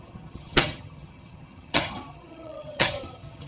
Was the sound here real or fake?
fake